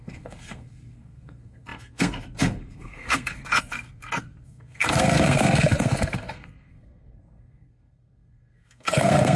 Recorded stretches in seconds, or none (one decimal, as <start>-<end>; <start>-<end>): none